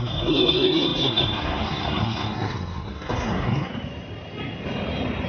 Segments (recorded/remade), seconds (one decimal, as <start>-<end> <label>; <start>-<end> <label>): 0.0-3.7 remade; 3.7-5.3 recorded